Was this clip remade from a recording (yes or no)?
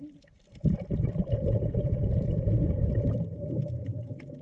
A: no